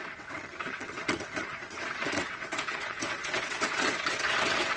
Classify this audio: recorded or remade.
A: remade